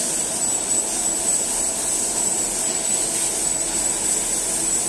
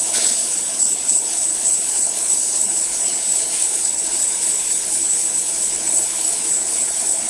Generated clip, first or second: second